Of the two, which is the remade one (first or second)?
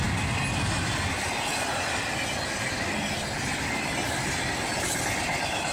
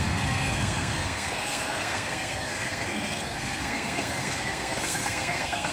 second